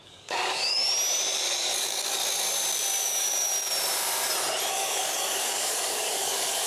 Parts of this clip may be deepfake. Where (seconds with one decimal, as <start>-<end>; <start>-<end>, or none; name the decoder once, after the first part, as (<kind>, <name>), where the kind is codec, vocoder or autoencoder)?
0.0-0.9 (codec, DAC); 1.6-2.2; 3.0-3.5; 4.7-6.7